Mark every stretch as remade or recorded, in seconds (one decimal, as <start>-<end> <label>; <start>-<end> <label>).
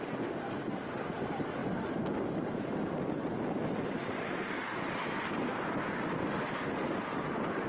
0.0-7.7 recorded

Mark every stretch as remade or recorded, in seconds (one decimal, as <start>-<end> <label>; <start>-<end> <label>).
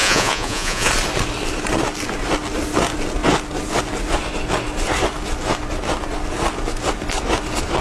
0.0-0.9 remade; 0.9-7.8 recorded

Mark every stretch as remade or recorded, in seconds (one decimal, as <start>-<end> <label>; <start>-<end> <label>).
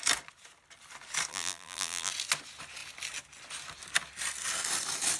0.0-1.3 recorded; 1.3-2.1 remade; 2.1-5.2 recorded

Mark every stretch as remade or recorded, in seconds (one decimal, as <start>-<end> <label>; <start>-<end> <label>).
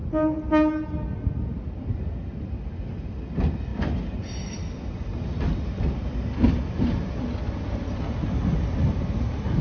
0.0-9.6 recorded